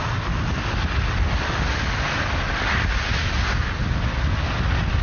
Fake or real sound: real